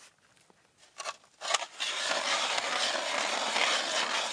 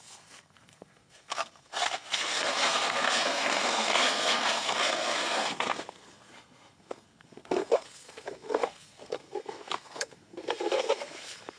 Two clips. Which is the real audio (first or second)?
first